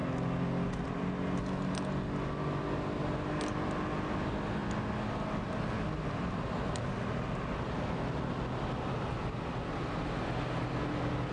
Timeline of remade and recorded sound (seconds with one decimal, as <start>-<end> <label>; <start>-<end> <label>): 0.0-11.3 recorded